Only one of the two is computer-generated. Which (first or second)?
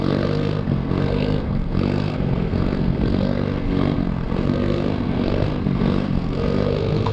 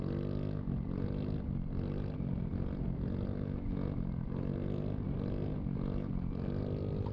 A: first